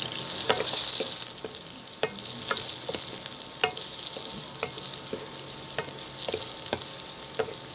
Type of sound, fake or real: real